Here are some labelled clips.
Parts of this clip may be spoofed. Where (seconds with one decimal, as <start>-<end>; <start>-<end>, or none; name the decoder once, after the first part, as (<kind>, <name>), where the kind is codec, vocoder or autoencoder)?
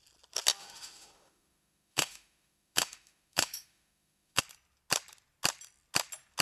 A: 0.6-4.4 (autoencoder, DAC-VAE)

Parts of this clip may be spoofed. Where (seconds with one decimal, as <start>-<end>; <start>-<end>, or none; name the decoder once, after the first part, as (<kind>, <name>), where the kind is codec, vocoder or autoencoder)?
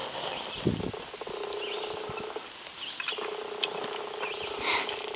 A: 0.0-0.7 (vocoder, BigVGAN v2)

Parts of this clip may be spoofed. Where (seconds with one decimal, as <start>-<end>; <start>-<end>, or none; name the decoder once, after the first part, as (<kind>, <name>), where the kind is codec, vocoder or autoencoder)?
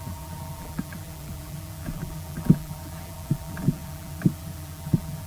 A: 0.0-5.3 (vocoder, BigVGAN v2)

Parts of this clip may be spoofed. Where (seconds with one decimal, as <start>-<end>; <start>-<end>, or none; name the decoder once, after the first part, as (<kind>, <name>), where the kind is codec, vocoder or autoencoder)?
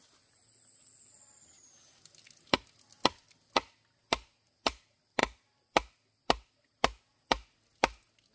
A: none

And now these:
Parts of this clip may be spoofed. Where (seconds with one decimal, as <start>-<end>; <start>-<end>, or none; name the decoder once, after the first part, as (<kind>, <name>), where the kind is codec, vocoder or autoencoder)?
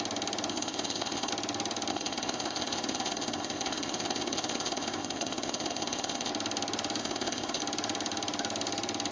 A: 0.5-1.3 (codec, ZipCodec); 1.9-6.3; 7.0-7.6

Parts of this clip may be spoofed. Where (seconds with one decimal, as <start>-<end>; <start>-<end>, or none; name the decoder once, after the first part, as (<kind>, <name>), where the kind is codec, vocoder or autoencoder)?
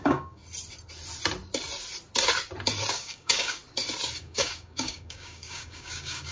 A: 0.0-0.4 (codec, DAC); 2.9-3.6; 4.2-6.3